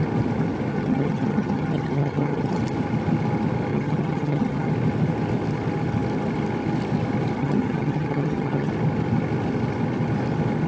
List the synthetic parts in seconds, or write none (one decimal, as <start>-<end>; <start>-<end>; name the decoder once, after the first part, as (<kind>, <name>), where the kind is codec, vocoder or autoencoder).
0.7-2.6 (vocoder, HiFi-GAN); 3.7-4.7; 7.4-8.7